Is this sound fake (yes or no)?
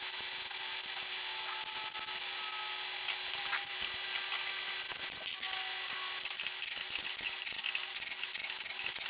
no